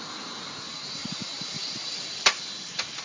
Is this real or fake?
real